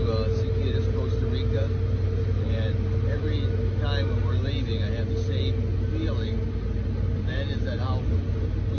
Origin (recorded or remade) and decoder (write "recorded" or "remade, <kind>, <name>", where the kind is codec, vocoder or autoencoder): recorded